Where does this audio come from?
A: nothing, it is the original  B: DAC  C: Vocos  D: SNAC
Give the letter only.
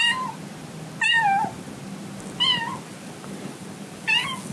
A